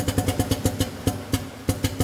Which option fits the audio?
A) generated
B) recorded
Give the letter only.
B